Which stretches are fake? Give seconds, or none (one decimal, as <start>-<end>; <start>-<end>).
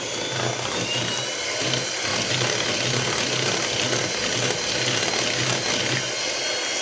none